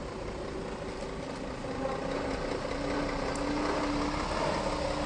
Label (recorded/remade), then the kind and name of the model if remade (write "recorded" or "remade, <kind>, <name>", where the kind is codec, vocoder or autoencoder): recorded